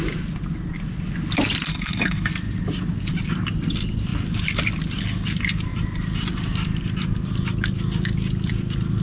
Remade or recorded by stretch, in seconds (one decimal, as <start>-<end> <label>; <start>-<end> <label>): 0.0-1.7 recorded; 1.7-2.3 remade; 2.3-9.0 recorded